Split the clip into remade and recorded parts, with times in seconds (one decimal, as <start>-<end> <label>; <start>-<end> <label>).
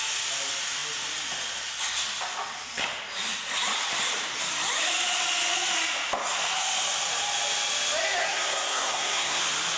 0.0-8.2 recorded; 8.2-9.4 remade; 9.4-9.8 recorded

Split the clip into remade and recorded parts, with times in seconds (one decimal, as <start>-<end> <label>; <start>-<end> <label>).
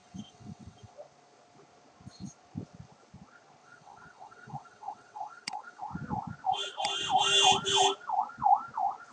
0.0-0.9 remade; 0.9-3.6 recorded; 3.6-5.8 remade; 5.8-9.1 recorded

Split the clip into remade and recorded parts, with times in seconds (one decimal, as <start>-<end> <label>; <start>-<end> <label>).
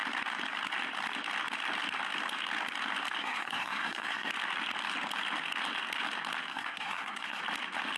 0.0-3.2 recorded; 3.2-4.3 remade; 4.3-6.5 recorded; 6.5-7.4 remade; 7.4-8.0 recorded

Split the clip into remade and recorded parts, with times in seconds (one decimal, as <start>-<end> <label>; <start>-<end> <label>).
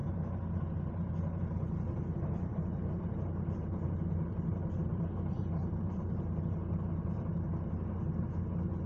0.0-2.5 recorded; 2.5-7.3 remade; 7.3-8.2 recorded; 8.2-8.9 remade